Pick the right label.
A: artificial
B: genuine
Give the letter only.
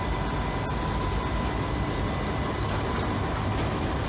B